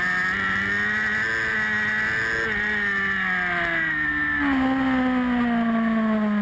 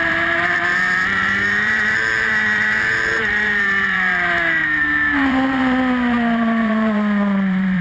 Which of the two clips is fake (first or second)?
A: second